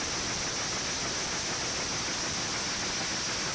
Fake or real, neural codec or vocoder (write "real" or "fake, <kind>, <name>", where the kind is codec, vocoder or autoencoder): real